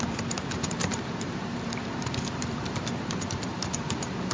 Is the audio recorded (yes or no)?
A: no